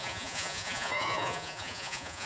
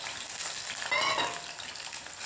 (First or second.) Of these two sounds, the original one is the second